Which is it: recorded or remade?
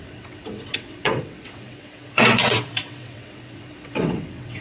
remade